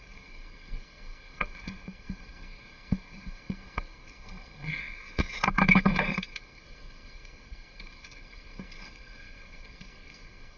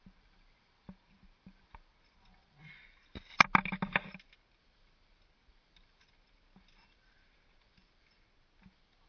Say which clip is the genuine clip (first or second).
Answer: second